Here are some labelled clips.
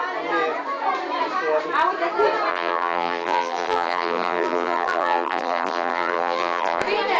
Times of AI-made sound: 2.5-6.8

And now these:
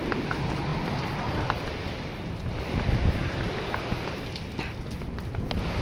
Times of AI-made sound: none

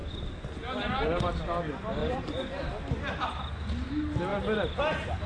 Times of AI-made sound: 0.0-0.5

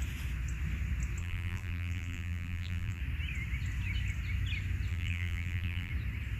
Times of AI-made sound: 1.2-3.0; 4.9-5.9